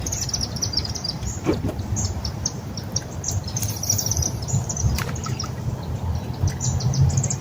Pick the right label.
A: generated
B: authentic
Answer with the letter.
A